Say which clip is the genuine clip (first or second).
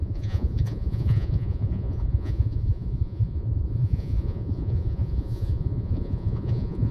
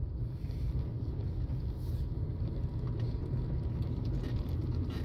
second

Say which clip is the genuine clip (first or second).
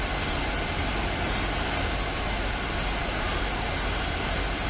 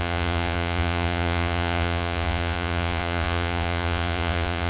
first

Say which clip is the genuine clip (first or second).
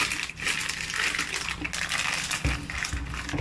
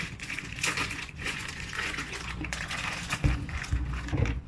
first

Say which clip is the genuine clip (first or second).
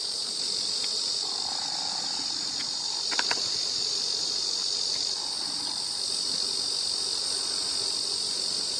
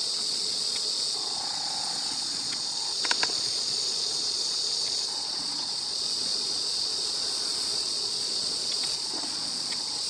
first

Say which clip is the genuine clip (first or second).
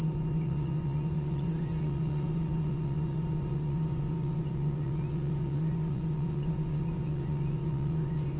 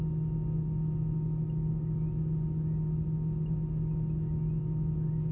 second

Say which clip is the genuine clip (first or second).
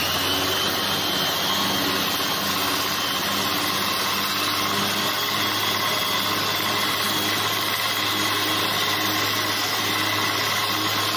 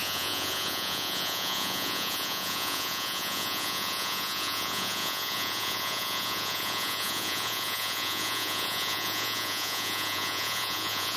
first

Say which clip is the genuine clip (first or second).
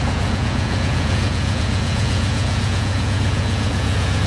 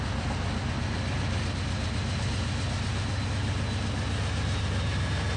second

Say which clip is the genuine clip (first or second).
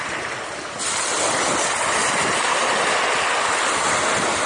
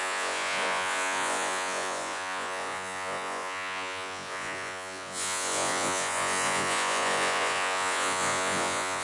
first